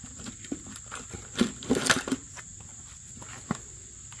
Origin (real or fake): real